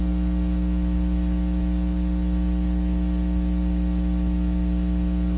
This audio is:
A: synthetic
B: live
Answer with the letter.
B